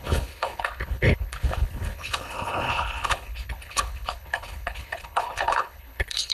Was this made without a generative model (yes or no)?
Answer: no